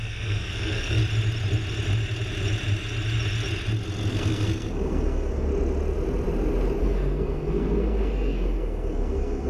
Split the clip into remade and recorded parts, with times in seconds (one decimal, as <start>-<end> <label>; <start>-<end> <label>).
0.0-1.0 remade; 1.0-4.1 recorded; 4.1-5.5 remade; 5.5-6.8 recorded; 6.8-9.5 remade